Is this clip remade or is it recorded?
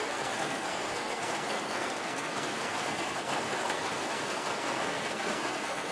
remade